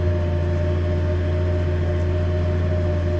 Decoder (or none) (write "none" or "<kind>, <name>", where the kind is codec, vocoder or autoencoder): none